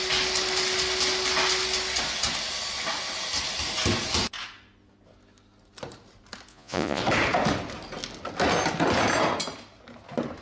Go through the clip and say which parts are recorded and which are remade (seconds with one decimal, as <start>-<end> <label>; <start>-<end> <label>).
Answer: 0.0-6.5 recorded; 6.5-7.0 remade; 7.0-10.4 recorded